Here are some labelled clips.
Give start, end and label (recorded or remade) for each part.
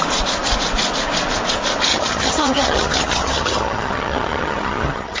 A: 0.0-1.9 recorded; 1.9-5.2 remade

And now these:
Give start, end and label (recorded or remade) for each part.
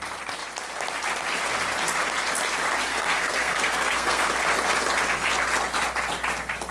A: 0.0-2.9 recorded; 2.9-4.3 remade; 4.3-6.7 recorded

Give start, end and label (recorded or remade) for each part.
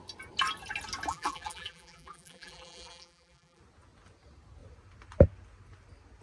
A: 0.0-1.1 recorded; 1.1-3.6 remade; 3.6-6.2 recorded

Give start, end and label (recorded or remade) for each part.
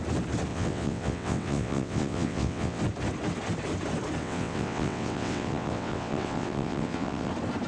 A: 0.0-0.5 recorded; 0.5-2.8 remade; 2.8-4.2 recorded; 4.2-7.3 remade; 7.3-7.7 recorded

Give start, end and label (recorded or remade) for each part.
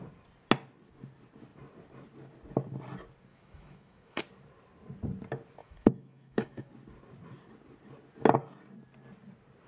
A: 0.0-3.3 recorded; 3.3-4.2 remade; 4.2-5.6 recorded; 5.6-6.7 remade; 6.7-9.7 recorded